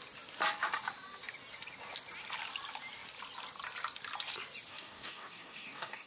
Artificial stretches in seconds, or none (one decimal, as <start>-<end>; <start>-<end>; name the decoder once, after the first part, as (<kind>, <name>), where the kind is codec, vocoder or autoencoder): 4.7-6.1 (codec, DAC)